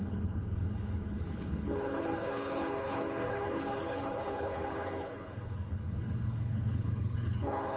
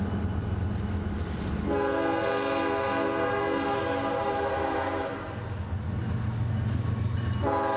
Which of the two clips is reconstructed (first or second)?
first